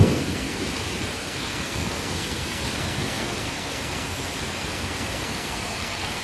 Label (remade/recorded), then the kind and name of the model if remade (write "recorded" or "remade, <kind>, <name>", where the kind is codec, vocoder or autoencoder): remade, codec, SNAC